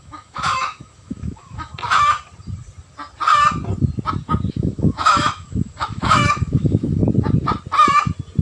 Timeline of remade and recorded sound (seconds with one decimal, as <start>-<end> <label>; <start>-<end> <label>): 0.0-1.7 remade; 1.7-4.5 recorded; 4.5-7.0 remade; 7.0-8.4 recorded